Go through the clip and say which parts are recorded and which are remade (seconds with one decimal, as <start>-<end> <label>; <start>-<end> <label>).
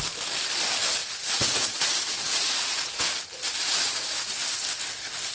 0.0-1.0 recorded; 1.0-3.2 remade; 3.2-3.6 recorded; 3.6-4.3 remade; 4.3-5.3 recorded